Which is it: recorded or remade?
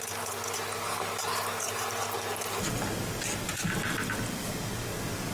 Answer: recorded